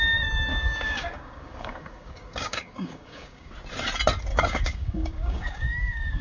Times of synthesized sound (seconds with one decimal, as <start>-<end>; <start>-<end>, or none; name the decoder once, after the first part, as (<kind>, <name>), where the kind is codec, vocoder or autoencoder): 0.5-3.5 (codec, DAC); 4.3-6.2